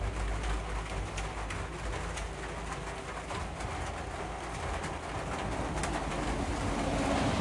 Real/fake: real